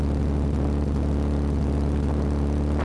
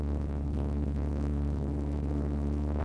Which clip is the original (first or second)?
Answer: first